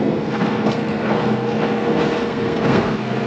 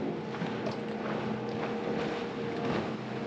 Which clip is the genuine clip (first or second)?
second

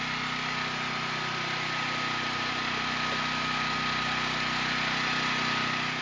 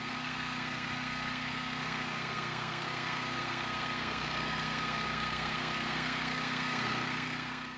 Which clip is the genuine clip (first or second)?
first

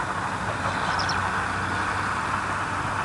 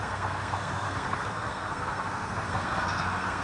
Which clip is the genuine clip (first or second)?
first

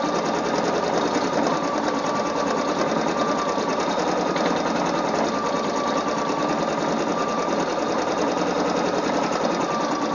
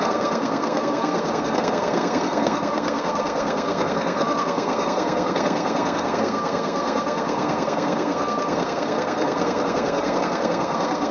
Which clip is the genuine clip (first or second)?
first